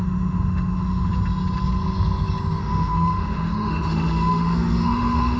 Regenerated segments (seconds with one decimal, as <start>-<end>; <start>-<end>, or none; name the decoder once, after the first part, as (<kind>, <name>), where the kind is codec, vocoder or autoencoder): 0.0-1.1 (autoencoder, DAC-VAE); 2.6-5.4